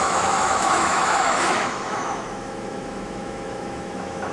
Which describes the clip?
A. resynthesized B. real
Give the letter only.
A